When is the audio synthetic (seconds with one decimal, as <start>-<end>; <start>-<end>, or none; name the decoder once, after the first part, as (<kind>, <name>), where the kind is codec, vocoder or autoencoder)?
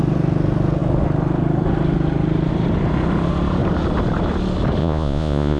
4.8-5.6 (vocoder, Vocos)